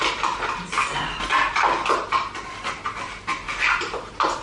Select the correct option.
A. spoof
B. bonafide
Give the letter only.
B